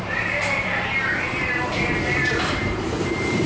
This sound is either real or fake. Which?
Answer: fake